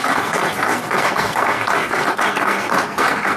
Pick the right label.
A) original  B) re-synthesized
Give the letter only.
B